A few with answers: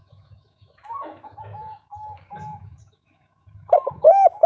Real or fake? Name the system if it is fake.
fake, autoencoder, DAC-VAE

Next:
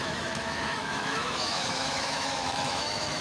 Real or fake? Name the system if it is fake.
fake, autoencoder, DAC-VAE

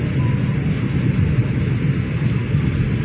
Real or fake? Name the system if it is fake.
real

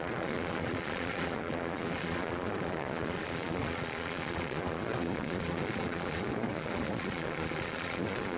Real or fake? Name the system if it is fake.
fake, vocoder, Vocos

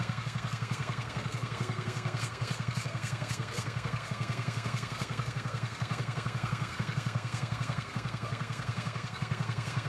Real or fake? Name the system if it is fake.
fake, codec, SNAC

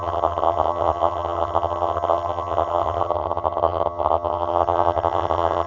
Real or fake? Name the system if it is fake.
fake, vocoder, HiFi-GAN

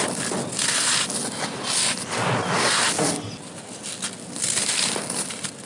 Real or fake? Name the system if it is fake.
real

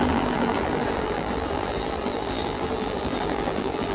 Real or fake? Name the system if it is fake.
fake, vocoder, BigVGAN v2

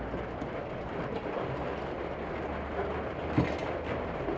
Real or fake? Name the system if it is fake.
real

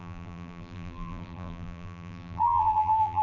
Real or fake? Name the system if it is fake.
fake, vocoder, BigVGAN v2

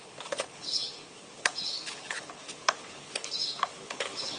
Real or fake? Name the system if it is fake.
fake, codec, HILCodec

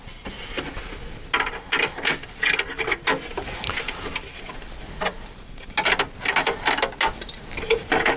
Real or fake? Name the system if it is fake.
real